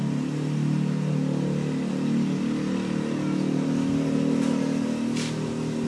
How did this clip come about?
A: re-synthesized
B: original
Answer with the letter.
B